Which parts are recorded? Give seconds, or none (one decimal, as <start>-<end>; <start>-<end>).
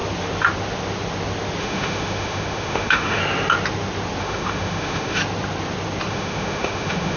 0.0-1.6; 3.2-4.2; 5.2-6.1